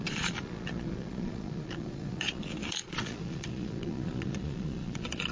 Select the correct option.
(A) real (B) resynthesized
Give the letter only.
B